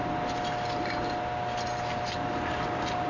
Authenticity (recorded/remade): recorded